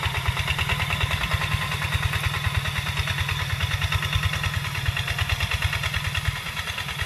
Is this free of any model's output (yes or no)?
yes